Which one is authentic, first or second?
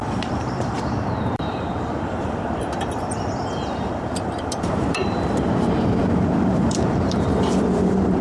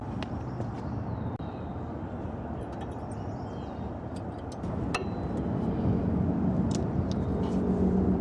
second